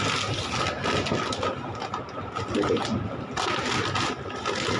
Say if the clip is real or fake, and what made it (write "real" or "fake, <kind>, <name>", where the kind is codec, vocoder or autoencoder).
real